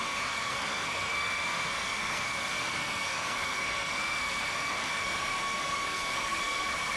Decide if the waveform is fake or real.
fake